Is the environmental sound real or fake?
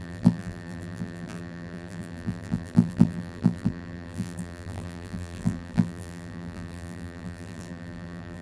fake